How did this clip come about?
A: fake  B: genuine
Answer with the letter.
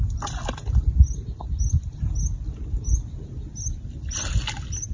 B